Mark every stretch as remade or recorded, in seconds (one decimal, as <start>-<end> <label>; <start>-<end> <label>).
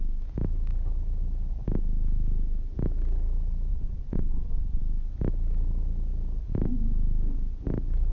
0.0-3.7 recorded; 3.7-4.8 remade; 4.8-8.1 recorded